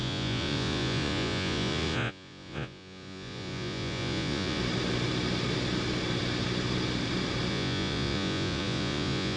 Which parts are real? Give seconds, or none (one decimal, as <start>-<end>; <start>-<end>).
4.6-7.5